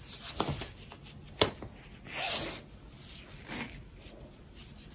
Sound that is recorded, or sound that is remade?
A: recorded